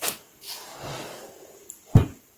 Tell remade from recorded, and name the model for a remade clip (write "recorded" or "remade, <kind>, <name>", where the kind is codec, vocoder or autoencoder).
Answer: recorded